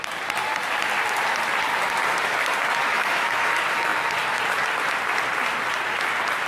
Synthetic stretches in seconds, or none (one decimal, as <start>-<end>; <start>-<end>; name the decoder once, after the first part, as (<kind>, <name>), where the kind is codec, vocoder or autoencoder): 2.9-3.5 (autoencoder, DAC-VAE)